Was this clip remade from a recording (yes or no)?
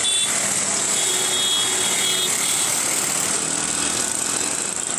no